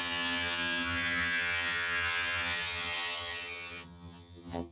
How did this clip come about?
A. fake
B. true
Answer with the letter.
A